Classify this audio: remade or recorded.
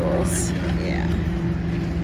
recorded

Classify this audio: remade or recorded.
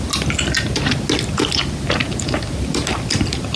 recorded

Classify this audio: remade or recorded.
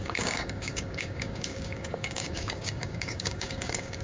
remade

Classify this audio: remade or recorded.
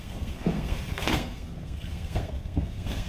remade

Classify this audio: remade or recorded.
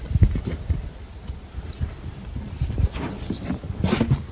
recorded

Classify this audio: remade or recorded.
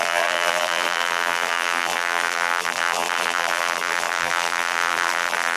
remade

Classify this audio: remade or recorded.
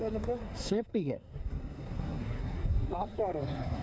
remade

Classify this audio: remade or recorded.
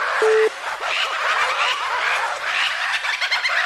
recorded